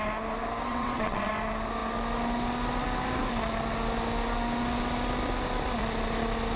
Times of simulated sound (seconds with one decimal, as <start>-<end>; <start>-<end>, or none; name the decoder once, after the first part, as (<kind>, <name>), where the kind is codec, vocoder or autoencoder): 0.7-1.3 (vocoder, WaveNeXt)